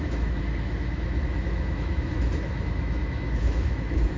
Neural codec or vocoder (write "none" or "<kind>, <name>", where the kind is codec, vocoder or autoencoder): autoencoder, DAC-VAE